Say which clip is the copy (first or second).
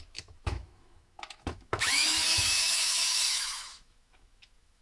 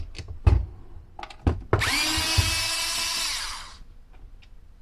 first